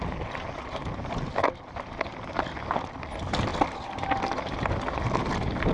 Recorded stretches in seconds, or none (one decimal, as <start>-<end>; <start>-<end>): 0.0-5.7